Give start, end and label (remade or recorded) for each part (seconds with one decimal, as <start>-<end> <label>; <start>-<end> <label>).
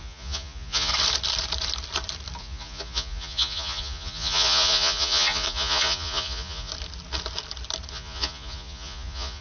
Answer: 0.0-0.9 remade; 0.9-2.4 recorded; 2.4-6.7 remade; 6.7-7.9 recorded; 7.9-9.4 remade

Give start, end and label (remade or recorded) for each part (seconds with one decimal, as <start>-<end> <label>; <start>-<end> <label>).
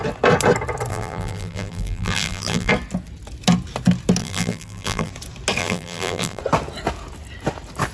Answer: 0.0-0.9 recorded; 0.9-2.7 remade; 2.7-4.2 recorded; 4.2-5.1 remade; 5.1-5.6 recorded; 5.6-6.4 remade; 6.4-7.9 recorded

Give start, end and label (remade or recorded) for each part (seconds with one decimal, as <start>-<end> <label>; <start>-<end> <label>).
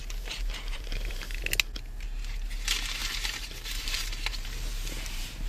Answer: 0.0-1.4 remade; 1.4-3.0 recorded; 3.0-5.5 remade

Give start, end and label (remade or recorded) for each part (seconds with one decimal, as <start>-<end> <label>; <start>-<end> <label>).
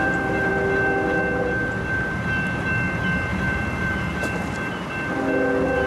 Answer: 0.0-0.5 remade; 0.5-3.3 recorded; 3.3-4.7 remade; 4.7-5.9 recorded